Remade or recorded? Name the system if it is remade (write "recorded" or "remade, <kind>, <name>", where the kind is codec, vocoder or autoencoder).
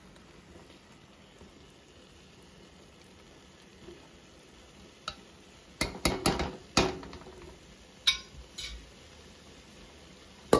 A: recorded